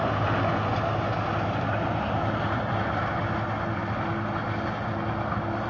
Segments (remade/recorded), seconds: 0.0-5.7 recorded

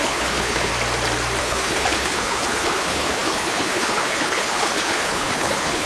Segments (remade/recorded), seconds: 0.0-0.7 remade; 0.7-1.4 recorded; 1.4-5.9 remade

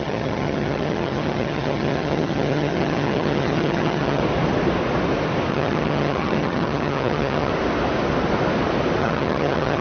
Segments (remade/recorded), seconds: 0.0-4.2 remade; 4.2-5.5 recorded; 5.5-7.5 remade; 7.5-9.0 recorded; 9.0-9.8 remade

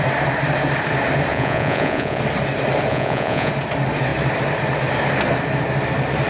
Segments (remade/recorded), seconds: 0.0-1.3 recorded; 1.3-2.2 remade; 2.2-2.9 recorded; 2.9-3.5 remade; 3.5-6.3 recorded

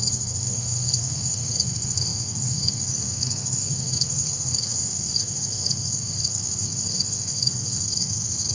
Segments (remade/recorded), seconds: 0.0-8.5 remade

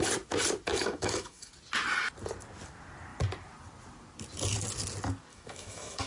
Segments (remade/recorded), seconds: 0.0-0.7 recorded; 0.7-1.5 remade; 1.5-5.3 recorded; 5.3-6.1 remade